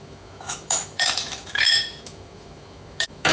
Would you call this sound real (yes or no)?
no